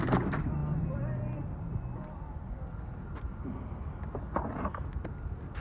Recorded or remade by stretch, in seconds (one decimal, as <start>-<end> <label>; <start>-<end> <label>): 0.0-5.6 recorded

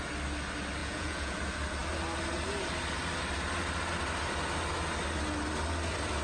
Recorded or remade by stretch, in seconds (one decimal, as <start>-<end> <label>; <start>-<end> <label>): 0.0-0.8 recorded; 0.8-1.4 remade; 1.4-6.2 recorded

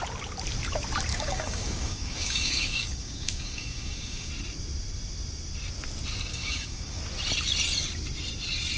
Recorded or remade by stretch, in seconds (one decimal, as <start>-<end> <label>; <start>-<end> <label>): 0.0-1.1 recorded; 1.1-4.3 remade; 4.3-6.3 recorded; 6.3-7.0 remade; 7.0-8.8 recorded

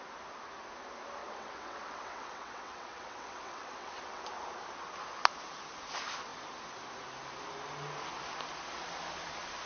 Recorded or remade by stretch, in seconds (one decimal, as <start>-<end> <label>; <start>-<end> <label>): 0.0-1.2 recorded; 1.2-4.2 remade; 4.2-9.7 recorded